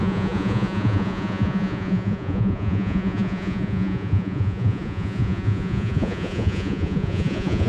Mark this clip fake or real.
fake